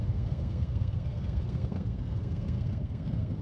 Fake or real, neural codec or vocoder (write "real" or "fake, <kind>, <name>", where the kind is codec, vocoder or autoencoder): fake, codec, SNAC